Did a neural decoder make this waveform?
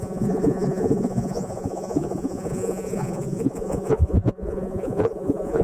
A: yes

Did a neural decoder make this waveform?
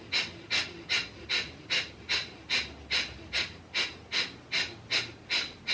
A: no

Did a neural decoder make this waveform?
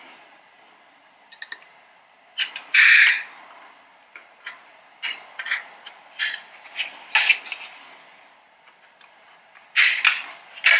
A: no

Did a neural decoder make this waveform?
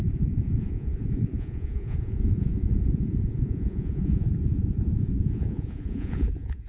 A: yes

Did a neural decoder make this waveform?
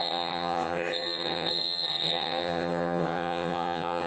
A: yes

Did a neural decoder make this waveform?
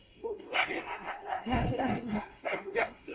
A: yes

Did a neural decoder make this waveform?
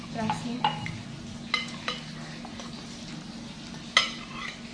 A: no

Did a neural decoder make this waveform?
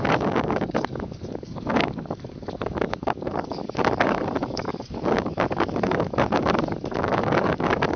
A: yes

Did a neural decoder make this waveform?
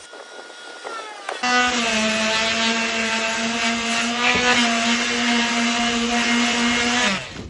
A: no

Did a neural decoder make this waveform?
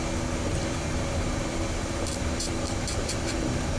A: yes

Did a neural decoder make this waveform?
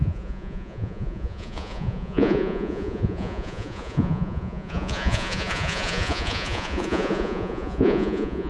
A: yes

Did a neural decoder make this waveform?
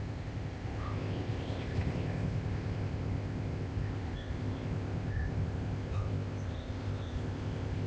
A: yes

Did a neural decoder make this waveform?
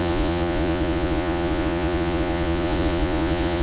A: yes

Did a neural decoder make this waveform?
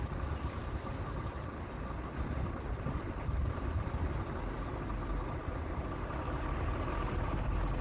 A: no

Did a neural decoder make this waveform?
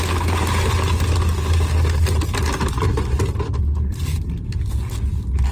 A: no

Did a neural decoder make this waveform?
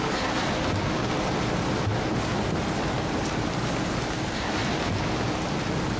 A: no